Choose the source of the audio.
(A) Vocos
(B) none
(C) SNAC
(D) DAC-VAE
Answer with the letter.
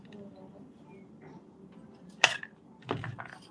B